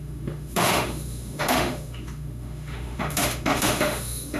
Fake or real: fake